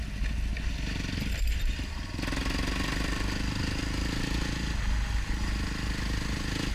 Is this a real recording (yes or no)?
yes